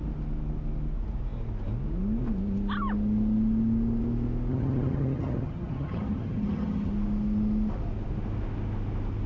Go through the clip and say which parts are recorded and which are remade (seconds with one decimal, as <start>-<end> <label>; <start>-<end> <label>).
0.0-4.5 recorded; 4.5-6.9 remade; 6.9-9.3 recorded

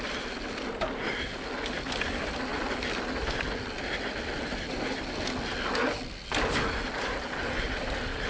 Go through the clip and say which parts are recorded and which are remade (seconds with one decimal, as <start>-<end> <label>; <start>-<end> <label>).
0.0-8.3 recorded

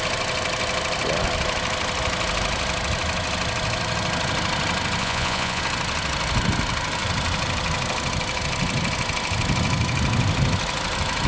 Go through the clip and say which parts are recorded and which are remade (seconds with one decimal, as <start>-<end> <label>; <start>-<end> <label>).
0.0-5.0 recorded; 5.0-5.6 remade; 5.6-11.3 recorded

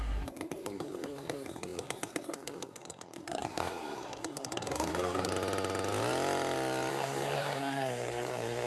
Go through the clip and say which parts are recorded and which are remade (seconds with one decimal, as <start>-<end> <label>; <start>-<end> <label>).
0.0-5.3 remade; 5.3-6.9 recorded; 6.9-8.7 remade

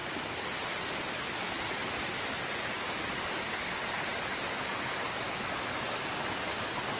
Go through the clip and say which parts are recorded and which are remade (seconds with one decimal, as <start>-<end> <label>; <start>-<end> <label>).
0.0-7.0 recorded